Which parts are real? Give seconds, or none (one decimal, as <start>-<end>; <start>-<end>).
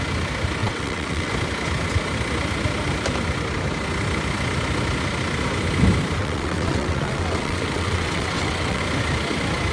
0.0-0.6; 1.3-6.2; 8.8-9.7